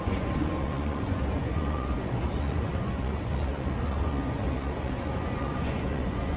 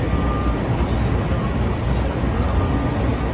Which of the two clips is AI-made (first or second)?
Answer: first